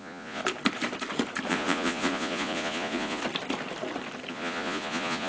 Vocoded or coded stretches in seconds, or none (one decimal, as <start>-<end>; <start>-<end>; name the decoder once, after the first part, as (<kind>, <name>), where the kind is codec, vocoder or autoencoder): 0.0-0.4 (vocoder, Vocos); 1.5-3.2; 4.3-5.3